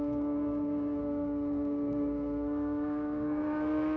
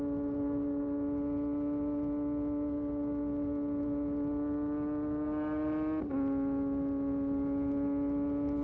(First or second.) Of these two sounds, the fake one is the first